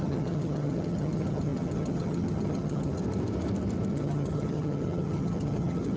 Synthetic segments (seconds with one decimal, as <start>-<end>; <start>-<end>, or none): 0.0-3.0; 3.9-6.0